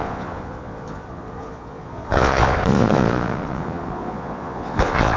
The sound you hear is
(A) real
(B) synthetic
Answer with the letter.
B